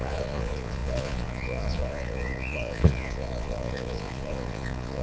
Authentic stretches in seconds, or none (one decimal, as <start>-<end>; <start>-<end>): none